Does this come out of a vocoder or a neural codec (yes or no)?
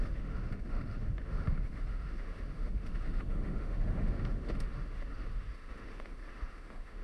yes